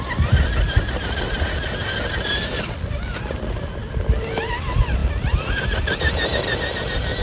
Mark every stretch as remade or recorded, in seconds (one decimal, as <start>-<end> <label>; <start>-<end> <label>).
0.0-7.2 recorded